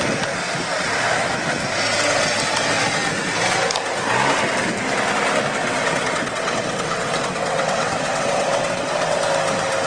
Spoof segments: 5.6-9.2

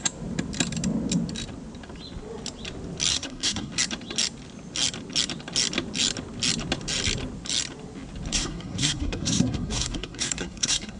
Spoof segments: 3.1-3.7; 8.3-11.0

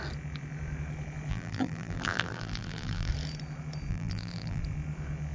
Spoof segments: 1.3-3.1; 3.9-4.6

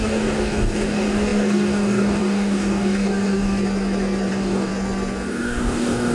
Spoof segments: 0.0-3.6; 4.3-4.7; 5.3-6.1